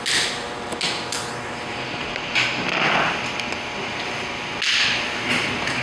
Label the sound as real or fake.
real